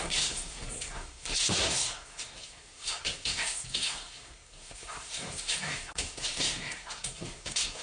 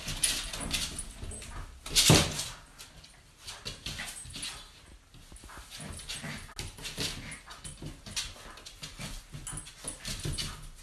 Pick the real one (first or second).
second